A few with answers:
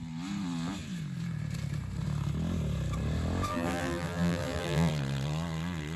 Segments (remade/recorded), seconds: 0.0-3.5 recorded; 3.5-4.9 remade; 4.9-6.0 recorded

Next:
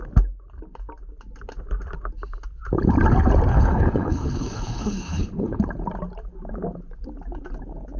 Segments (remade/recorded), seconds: 0.0-3.5 recorded; 3.5-5.6 remade; 5.6-8.0 recorded

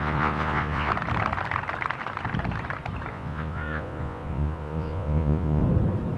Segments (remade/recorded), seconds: 0.0-0.9 remade; 0.9-3.1 recorded; 3.1-5.6 remade; 5.6-6.2 recorded

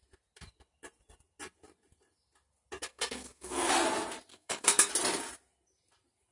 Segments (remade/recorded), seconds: 0.0-2.9 recorded; 2.9-3.7 remade; 3.7-4.3 recorded; 4.3-4.9 remade; 4.9-6.3 recorded

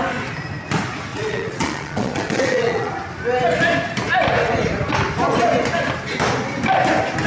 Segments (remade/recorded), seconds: 0.0-1.1 recorded; 1.1-2.9 remade; 2.9-7.3 recorded

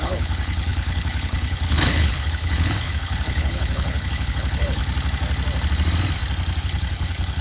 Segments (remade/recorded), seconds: 0.0-4.8 remade; 4.8-6.6 recorded; 6.6-7.4 remade

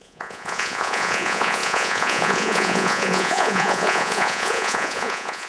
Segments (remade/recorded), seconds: 0.0-5.5 remade

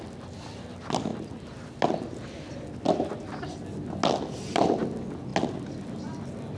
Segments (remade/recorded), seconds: 0.0-6.6 recorded